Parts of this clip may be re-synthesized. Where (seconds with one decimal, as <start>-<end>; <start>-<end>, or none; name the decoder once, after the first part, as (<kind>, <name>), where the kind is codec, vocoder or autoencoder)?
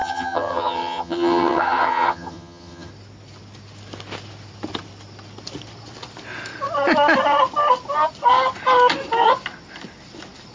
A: 0.0-2.9 (vocoder, HiFi-GAN)